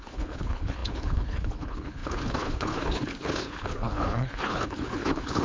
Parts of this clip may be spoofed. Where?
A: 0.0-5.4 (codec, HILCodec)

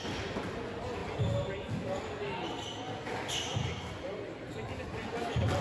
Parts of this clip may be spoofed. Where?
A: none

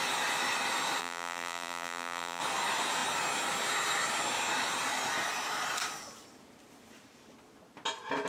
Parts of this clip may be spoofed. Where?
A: 1.0-2.4 (vocoder, BigVGAN v2)

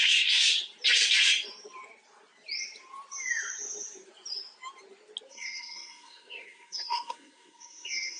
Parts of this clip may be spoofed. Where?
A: 0.0-0.4 (codec, SNAC); 5.3-8.2

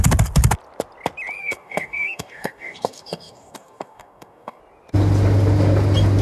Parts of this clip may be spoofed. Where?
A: 1.4-4.6 (codec, DAC)